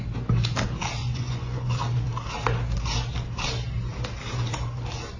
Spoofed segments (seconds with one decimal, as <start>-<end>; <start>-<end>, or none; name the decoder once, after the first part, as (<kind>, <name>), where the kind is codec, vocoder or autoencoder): 1.0-1.7 (vocoder, Vocos)